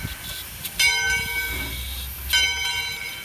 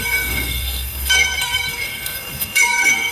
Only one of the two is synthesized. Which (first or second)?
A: second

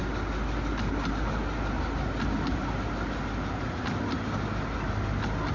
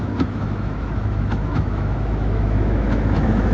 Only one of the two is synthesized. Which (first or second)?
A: second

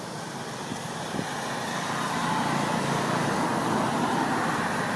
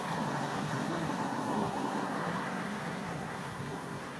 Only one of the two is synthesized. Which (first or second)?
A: second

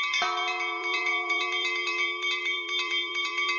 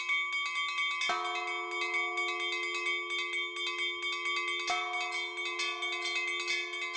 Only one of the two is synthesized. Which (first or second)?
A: first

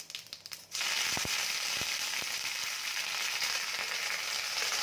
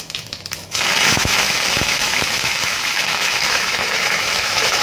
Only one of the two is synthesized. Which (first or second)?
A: second